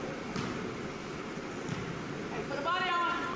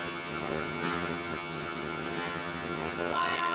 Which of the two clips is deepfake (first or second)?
second